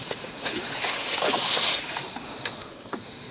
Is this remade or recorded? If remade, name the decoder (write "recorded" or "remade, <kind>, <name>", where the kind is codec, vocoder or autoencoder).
remade, autoencoder, DAC-VAE